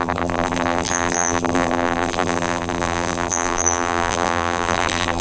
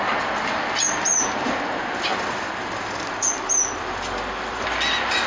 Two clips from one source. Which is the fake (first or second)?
first